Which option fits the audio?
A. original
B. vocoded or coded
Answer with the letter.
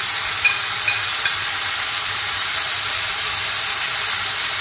A